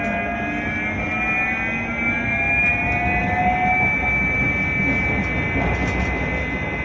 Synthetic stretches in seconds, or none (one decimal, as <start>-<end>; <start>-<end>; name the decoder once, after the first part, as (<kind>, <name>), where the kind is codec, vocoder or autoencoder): none